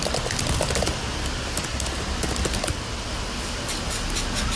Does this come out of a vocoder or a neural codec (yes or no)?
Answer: no